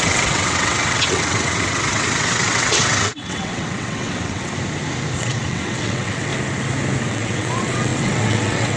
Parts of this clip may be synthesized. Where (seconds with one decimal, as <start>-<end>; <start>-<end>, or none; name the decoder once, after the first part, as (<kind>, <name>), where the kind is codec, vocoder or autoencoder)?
0.0-4.5 (vocoder, WaveNeXt); 5.2-6.3; 7.0-8.8